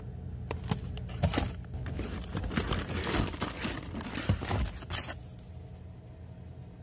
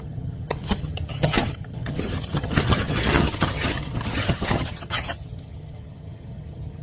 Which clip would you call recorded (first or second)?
first